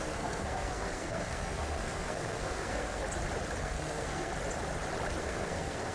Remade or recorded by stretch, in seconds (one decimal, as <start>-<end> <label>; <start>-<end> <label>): 0.0-3.0 remade; 3.0-3.6 recorded; 3.6-4.3 remade; 4.3-5.2 recorded; 5.2-5.9 remade